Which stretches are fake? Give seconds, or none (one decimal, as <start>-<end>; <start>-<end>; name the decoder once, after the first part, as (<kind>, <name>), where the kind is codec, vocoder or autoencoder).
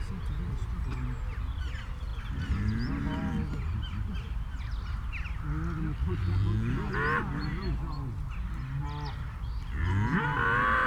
none